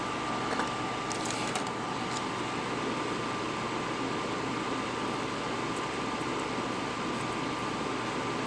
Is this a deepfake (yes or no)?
no